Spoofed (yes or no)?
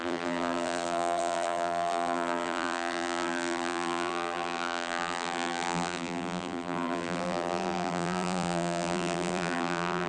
yes